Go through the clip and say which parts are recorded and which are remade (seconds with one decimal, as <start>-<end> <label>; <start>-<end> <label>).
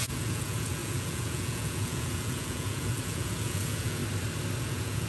0.0-4.0 remade; 4.0-4.6 recorded; 4.6-5.1 remade